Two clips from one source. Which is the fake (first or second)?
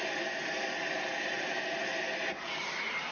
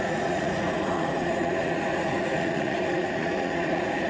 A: second